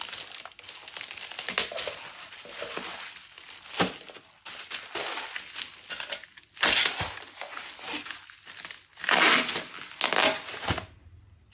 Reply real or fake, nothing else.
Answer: real